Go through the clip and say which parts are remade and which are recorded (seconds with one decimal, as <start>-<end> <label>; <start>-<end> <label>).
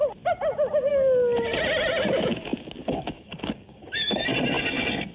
0.0-2.8 recorded; 2.8-4.2 remade; 4.2-5.1 recorded